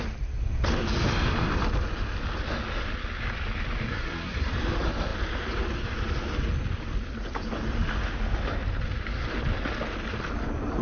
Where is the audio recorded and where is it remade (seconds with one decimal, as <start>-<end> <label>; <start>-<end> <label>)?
0.0-3.9 recorded; 3.9-4.5 remade; 4.5-10.8 recorded